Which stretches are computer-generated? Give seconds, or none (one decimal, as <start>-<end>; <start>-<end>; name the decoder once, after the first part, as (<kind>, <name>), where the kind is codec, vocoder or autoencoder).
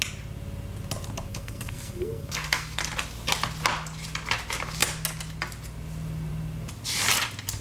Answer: 1.3-2.8 (codec, SNAC)